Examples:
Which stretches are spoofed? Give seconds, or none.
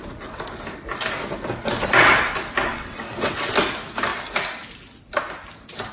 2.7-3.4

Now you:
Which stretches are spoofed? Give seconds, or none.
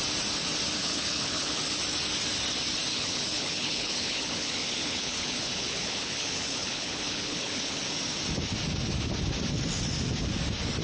0.8-1.6; 2.9-7.8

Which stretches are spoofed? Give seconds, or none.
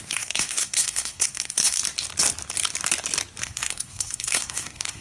0.0-1.8; 3.4-5.0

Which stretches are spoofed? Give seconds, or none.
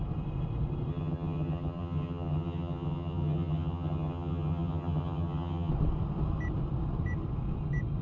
0.9-5.7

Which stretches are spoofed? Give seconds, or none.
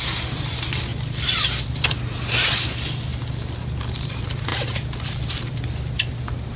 none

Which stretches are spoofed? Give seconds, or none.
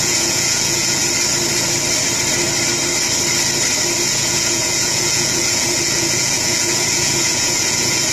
0.0-1.0; 4.1-8.1